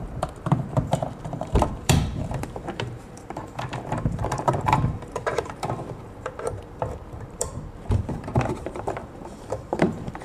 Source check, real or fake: fake